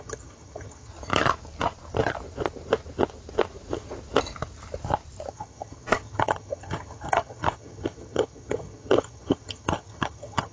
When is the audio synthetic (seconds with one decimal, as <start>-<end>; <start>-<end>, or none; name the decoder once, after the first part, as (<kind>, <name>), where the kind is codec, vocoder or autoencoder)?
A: 0.0-0.9 (vocoder, HiFi-GAN); 5.3-10.5